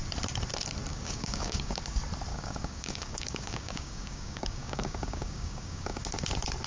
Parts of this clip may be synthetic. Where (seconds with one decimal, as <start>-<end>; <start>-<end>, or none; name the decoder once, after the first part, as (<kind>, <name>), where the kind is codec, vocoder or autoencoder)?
0.9-1.8 (codec, DAC); 2.3-6.0